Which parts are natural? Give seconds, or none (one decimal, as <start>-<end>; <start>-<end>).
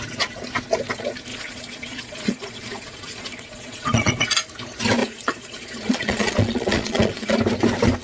0.0-1.3; 4.1-5.0; 7.4-8.0